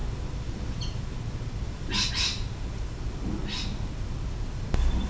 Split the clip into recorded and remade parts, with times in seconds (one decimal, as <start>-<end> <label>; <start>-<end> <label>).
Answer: 0.0-5.1 recorded

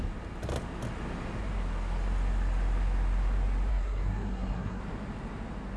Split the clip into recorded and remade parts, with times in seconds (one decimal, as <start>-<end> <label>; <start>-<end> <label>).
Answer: 0.0-3.7 recorded; 3.7-4.8 remade; 4.8-5.8 recorded

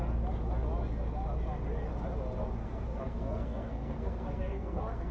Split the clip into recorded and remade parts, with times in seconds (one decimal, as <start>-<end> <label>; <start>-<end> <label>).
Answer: 0.0-2.6 recorded; 2.6-5.1 remade

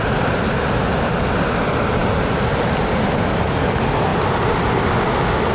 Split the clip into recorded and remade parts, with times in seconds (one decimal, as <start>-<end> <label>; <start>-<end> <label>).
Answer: 0.0-5.5 recorded